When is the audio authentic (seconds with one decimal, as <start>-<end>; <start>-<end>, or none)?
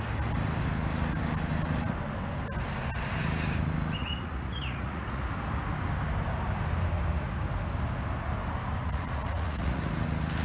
0.0-4.0; 5.2-8.8; 9.9-10.4